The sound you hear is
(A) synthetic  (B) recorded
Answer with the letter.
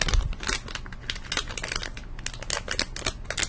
B